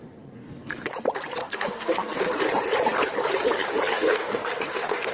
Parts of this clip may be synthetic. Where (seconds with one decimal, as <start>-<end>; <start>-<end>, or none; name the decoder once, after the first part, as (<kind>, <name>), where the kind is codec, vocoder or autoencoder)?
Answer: 0.4-0.9 (codec, SNAC); 1.4-2.3; 3.9-5.1